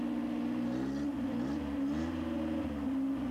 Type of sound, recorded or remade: recorded